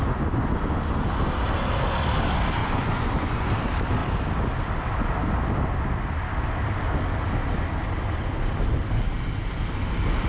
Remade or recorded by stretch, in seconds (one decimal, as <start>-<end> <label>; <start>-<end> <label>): 0.0-2.6 recorded; 2.6-3.5 remade; 3.5-10.3 recorded